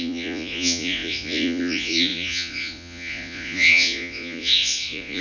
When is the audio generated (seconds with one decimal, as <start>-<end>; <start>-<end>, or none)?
0.0-5.2

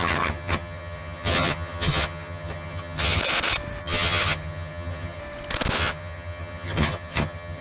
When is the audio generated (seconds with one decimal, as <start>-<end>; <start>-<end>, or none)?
0.0-3.2; 3.8-5.2; 5.8-7.6